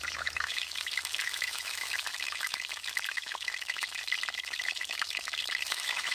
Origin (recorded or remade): remade